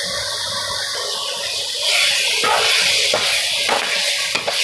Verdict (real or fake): real